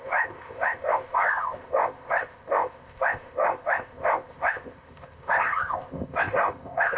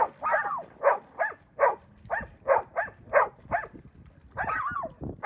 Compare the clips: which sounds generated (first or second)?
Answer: first